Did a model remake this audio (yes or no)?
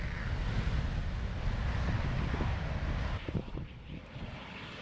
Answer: no